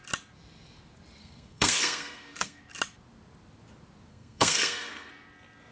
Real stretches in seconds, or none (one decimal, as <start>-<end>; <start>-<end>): 0.0-1.2; 2.6-4.1; 5.1-5.7